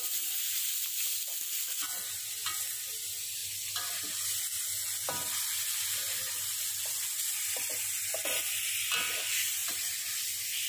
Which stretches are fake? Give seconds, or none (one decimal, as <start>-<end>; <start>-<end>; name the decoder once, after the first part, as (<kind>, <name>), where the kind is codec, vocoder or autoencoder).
none